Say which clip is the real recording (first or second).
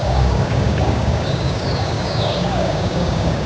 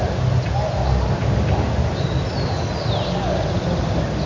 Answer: second